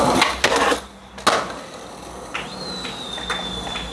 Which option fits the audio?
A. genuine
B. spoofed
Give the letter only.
A